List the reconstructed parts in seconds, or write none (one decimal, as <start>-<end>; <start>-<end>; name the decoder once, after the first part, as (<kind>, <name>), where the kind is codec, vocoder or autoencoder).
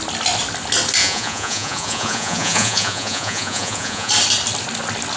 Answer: 1.0-4.1 (vocoder, Vocos)